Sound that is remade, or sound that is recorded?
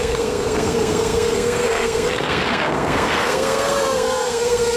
remade